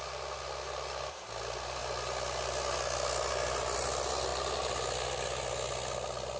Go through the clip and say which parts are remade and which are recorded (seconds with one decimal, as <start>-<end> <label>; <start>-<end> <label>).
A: 0.0-6.4 recorded